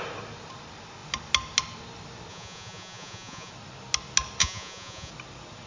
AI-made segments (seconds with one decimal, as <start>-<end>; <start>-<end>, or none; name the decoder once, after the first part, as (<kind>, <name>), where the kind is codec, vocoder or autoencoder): 2.3-3.5 (vocoder, Vocos); 4.4-5.1